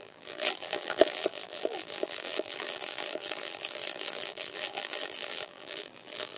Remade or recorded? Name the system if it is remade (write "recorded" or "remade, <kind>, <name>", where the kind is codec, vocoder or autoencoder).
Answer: remade, vocoder, BigVGAN v2